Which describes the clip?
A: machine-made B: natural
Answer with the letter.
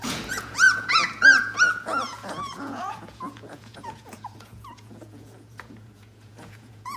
A